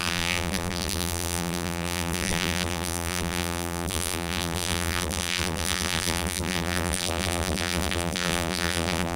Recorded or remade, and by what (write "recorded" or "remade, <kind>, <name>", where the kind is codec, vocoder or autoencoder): remade, vocoder, BigVGAN v2